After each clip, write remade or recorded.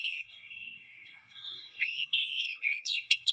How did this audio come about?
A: remade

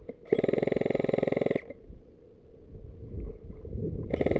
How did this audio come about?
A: recorded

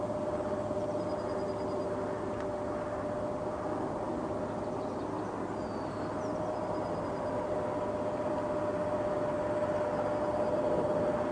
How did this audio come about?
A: recorded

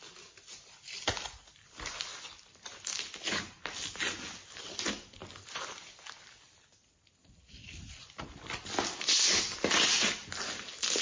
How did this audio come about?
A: recorded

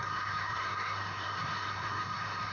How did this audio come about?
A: remade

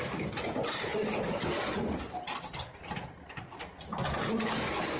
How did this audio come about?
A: recorded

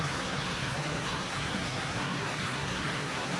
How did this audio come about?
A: remade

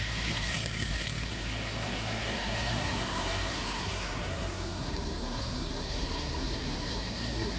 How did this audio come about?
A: remade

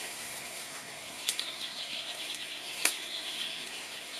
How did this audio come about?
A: remade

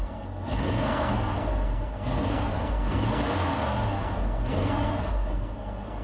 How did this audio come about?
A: remade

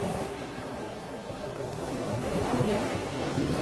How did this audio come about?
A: remade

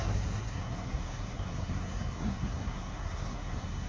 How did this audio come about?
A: remade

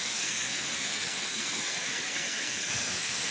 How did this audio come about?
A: remade